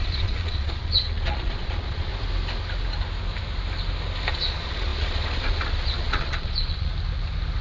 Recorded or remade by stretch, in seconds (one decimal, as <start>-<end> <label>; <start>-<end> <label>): 0.0-2.1 remade; 2.1-4.3 recorded; 4.3-6.9 remade; 6.9-7.6 recorded